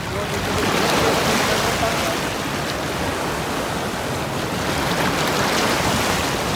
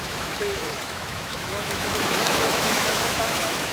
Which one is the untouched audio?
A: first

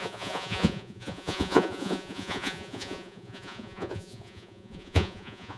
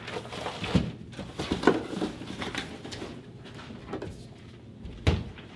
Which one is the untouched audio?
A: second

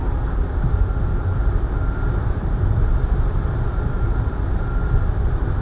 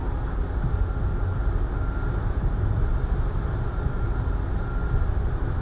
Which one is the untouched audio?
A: second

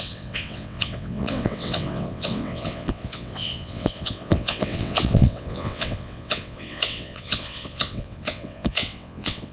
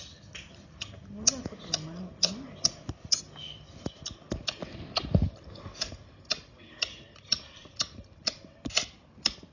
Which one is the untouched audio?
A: second